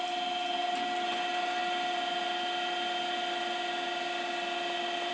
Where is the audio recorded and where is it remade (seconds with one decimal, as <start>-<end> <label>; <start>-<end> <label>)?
0.0-5.1 recorded